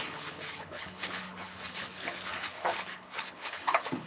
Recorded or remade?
remade